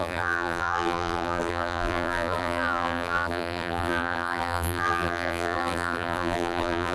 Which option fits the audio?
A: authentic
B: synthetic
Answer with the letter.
B